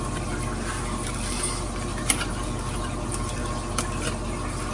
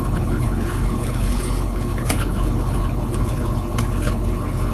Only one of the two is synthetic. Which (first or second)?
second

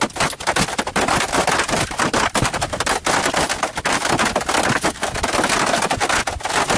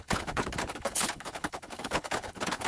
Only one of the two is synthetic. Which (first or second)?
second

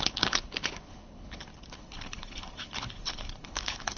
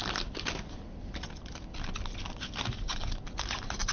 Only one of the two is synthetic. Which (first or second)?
first